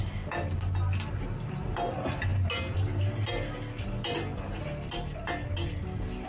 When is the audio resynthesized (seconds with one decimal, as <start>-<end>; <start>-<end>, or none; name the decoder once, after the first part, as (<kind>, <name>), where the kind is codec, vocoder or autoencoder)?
none